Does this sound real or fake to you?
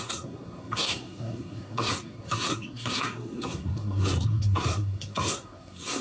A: fake